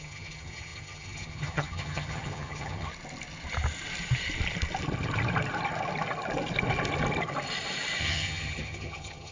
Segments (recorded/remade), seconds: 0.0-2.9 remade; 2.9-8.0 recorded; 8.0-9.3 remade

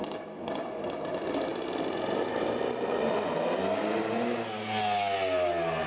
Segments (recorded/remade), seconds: 0.0-5.9 recorded

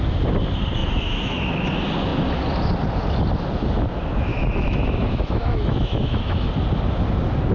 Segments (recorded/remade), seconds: 0.0-0.8 recorded; 0.8-1.5 remade; 1.5-4.3 recorded; 4.3-6.5 remade; 6.5-7.5 recorded

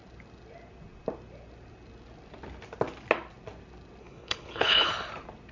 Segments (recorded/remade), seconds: 0.0-4.0 recorded; 4.0-4.9 remade; 4.9-5.5 recorded